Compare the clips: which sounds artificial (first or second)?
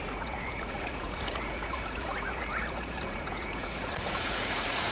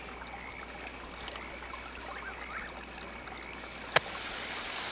first